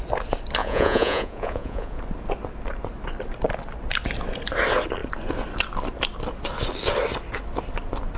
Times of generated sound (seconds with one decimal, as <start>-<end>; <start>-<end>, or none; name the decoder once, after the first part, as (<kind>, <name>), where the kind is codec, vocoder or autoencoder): 0.6-2.0 (vocoder, Vocos)